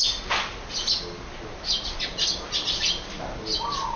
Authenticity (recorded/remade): recorded